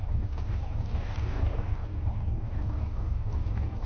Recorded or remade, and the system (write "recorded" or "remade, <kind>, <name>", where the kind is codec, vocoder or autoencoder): remade, codec, DAC